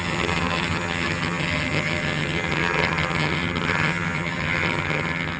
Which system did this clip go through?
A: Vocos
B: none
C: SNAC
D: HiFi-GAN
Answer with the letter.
D